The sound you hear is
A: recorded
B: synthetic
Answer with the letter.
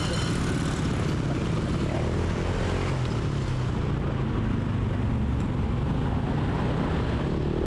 A